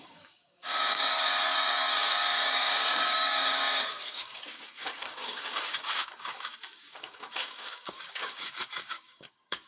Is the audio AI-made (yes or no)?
yes